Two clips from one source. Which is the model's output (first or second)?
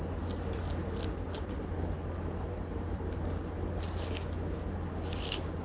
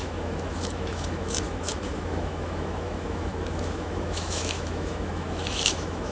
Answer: second